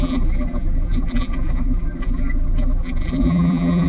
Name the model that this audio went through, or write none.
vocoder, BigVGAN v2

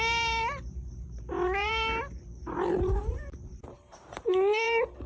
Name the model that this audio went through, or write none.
vocoder, BigVGAN v2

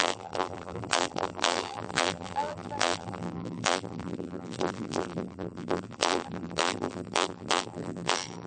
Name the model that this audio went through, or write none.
vocoder, BigVGAN v2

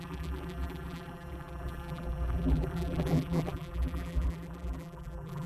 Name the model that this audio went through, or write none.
vocoder, BigVGAN v2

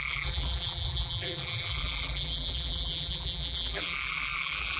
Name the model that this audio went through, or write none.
vocoder, BigVGAN v2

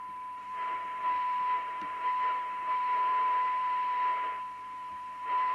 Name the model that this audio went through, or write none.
vocoder, BigVGAN v2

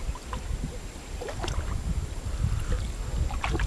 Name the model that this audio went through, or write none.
none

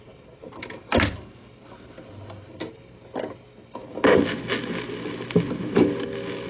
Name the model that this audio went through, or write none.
none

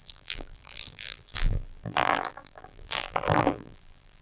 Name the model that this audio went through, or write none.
vocoder, BigVGAN v2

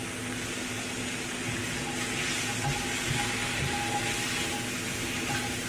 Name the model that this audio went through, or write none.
none